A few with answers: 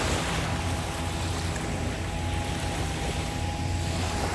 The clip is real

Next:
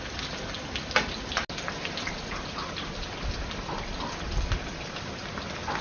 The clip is real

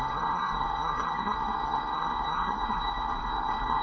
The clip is fake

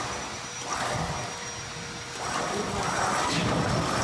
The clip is real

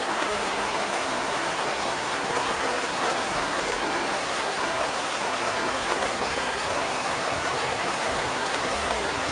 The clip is fake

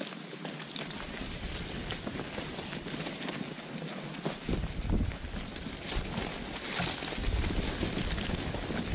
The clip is real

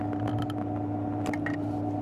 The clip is real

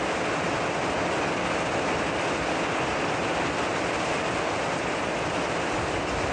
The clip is real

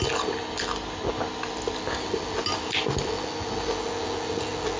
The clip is real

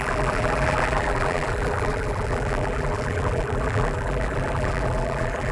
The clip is fake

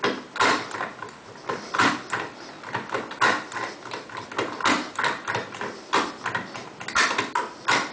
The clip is real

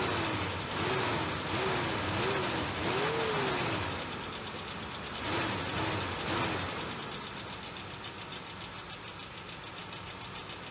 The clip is real